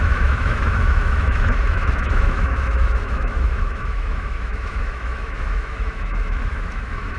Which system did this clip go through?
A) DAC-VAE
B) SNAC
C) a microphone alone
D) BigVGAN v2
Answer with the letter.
A